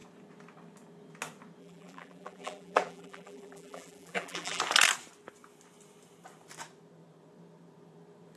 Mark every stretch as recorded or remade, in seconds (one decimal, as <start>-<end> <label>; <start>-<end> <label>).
0.0-1.6 recorded; 1.6-4.6 remade; 4.6-8.4 recorded